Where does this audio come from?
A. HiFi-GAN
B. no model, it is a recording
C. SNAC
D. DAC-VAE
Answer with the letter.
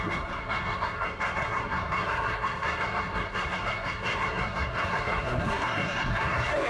C